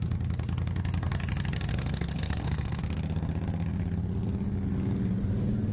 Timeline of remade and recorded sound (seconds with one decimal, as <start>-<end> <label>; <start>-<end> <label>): 0.0-1.7 recorded; 1.7-2.8 remade; 2.8-5.7 recorded